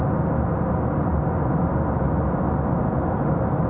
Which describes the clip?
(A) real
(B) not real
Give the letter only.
A